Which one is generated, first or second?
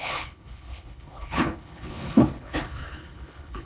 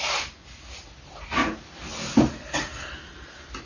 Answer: first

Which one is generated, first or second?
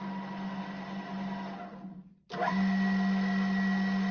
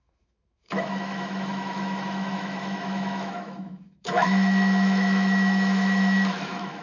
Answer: second